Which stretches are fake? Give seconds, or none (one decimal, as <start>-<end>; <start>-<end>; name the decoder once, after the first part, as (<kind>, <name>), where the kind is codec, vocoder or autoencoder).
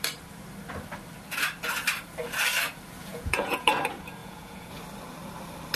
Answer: 3.1-3.7 (vocoder, Vocos); 4.2-4.8